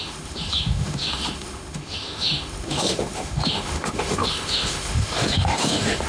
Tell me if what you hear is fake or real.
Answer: fake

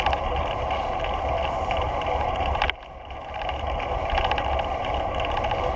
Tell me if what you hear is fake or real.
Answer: fake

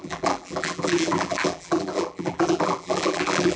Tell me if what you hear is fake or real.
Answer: fake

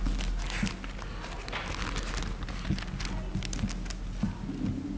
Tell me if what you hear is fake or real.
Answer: real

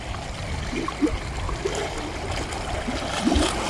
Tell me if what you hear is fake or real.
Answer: real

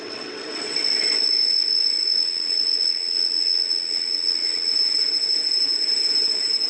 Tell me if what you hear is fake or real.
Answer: fake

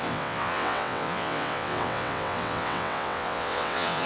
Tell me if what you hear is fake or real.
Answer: fake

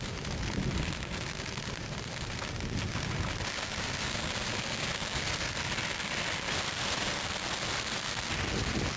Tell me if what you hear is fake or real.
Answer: real